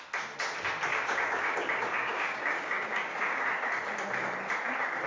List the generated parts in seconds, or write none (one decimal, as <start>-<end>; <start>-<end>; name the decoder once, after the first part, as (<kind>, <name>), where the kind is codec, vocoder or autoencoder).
0.9-3.4 (codec, DAC)